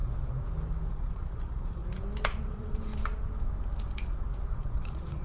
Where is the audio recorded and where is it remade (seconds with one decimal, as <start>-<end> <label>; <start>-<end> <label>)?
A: 0.0-0.9 recorded; 0.9-1.8 remade; 1.8-2.4 recorded; 2.4-2.9 remade; 2.9-4.5 recorded; 4.5-5.2 remade